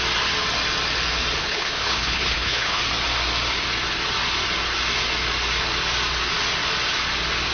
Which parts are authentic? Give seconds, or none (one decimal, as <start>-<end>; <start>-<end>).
0.0-1.4; 2.8-7.5